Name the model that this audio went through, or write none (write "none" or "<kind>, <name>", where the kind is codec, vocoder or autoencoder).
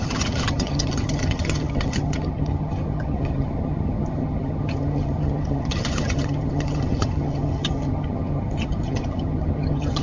vocoder, HiFi-GAN